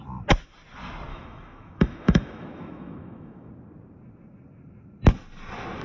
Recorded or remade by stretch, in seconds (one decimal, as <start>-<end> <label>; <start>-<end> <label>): 0.0-1.1 recorded; 1.1-3.5 remade; 3.5-5.8 recorded